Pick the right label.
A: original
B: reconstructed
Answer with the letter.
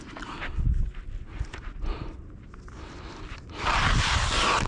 A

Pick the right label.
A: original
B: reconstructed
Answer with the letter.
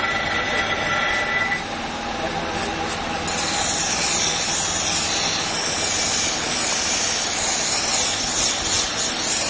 A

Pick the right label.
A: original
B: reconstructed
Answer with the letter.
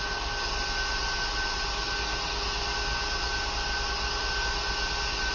A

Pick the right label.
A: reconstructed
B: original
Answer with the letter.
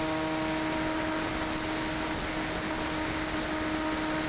B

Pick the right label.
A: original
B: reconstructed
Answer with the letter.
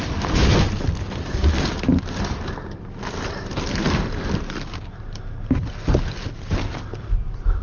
A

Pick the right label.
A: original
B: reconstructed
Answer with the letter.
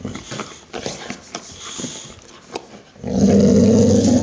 A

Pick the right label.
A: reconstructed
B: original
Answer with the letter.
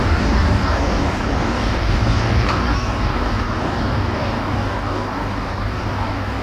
A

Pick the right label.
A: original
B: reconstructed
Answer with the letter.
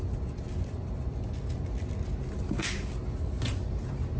A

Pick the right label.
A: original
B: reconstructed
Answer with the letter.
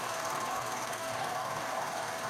B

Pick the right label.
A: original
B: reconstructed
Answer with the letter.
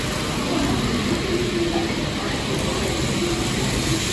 A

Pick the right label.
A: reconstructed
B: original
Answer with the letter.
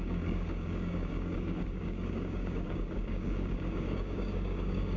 A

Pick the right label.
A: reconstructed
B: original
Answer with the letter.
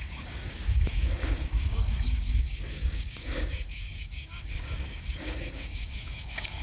A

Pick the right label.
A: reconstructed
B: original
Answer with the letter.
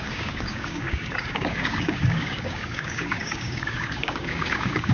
A